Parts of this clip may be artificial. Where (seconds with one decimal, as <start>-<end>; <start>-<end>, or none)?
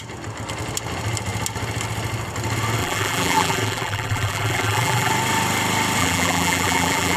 2.8-5.1; 6.0-7.2